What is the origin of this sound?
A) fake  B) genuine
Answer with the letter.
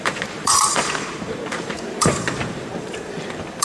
A